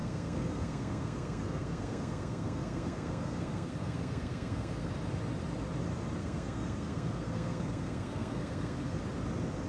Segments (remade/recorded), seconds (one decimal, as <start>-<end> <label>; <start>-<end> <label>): 0.0-4.9 remade; 4.9-6.2 recorded; 6.2-9.0 remade; 9.0-9.7 recorded